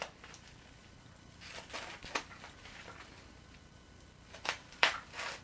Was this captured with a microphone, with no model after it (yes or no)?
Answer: yes